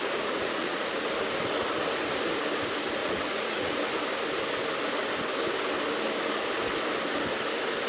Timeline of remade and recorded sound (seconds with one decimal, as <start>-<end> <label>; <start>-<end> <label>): 0.0-1.0 remade; 1.0-3.0 recorded; 3.0-3.7 remade; 3.7-7.9 recorded